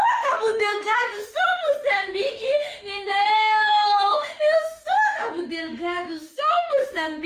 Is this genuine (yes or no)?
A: no